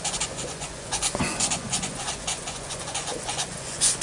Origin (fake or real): fake